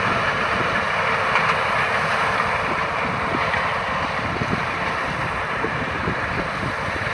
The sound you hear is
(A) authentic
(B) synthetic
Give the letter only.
A